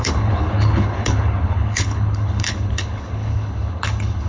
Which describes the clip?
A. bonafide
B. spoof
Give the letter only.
B